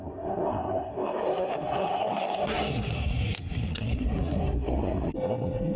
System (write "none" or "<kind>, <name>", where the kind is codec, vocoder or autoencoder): codec, SNAC